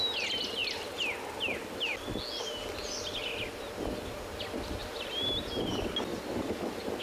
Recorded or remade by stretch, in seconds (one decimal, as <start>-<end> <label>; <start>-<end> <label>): 0.0-0.6 recorded; 0.6-1.6 remade; 1.6-4.8 recorded; 4.8-5.3 remade; 5.3-6.1 recorded; 6.1-6.6 remade; 6.6-7.0 recorded